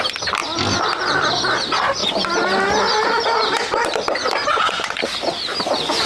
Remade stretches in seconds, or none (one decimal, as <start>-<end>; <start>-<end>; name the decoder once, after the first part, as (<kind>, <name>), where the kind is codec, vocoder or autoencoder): 4.4-5.0 (vocoder, Vocos)